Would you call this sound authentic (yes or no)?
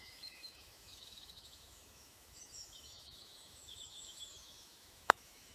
no